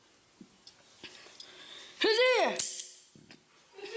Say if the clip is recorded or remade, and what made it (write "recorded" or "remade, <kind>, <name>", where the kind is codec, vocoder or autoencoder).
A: recorded